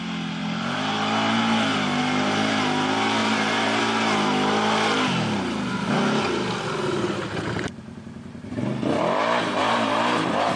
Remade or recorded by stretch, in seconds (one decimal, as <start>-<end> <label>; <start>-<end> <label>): 0.0-3.2 recorded; 3.2-3.8 remade; 3.8-9.6 recorded; 9.6-10.6 remade